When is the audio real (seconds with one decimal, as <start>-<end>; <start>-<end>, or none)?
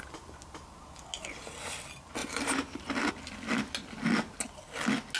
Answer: 0.0-2.2; 3.1-5.2